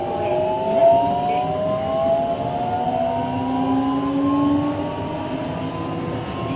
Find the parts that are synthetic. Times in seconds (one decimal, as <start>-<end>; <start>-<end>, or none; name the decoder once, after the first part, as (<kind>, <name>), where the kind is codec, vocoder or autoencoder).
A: none